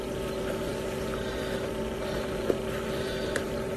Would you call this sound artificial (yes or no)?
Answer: no